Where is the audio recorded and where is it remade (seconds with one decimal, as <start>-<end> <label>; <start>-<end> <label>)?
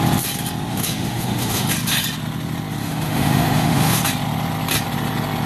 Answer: 0.0-0.7 recorded; 0.7-1.7 remade; 1.7-2.8 recorded; 2.8-4.0 remade; 4.0-5.5 recorded